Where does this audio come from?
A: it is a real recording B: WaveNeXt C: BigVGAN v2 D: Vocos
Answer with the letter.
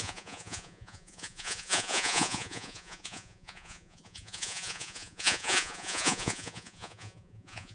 D